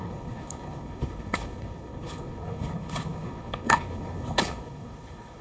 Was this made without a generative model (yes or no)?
no